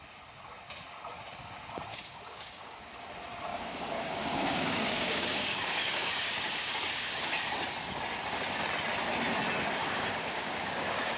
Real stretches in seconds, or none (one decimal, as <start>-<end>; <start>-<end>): 0.0-1.9; 2.8-3.5; 7.4-9.8